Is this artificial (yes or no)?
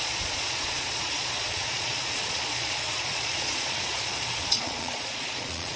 yes